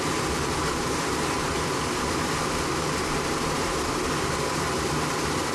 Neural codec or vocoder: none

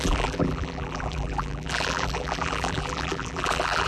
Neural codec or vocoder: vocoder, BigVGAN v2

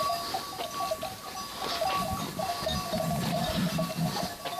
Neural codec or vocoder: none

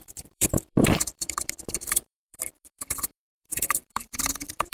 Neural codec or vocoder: vocoder, BigVGAN v2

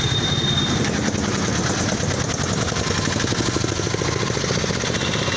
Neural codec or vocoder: none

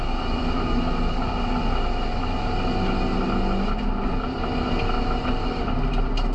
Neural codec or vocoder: none